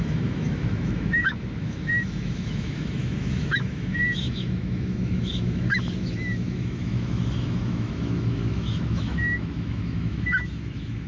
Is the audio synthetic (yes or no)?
yes